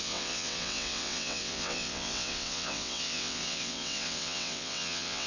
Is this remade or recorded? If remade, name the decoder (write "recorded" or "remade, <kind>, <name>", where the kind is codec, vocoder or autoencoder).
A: remade, vocoder, WaveNeXt